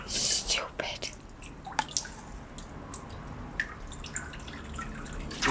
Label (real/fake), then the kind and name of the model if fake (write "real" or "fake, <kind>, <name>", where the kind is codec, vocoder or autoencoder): real